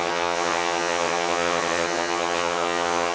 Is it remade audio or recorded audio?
remade